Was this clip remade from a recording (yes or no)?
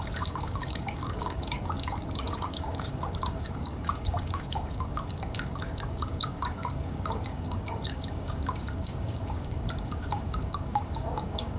yes